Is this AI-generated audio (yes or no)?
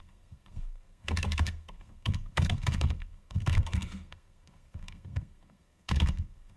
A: yes